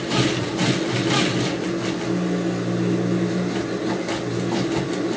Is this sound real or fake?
real